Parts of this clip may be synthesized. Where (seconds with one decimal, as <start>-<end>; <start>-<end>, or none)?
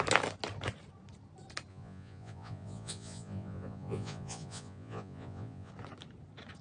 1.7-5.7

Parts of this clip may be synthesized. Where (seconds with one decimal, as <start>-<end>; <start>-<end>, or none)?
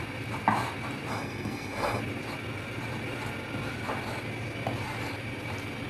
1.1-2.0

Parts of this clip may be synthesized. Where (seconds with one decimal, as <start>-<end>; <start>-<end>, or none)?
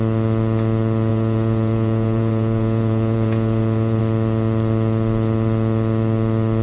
1.1-4.0